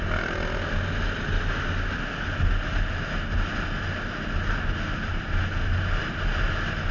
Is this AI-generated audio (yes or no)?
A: no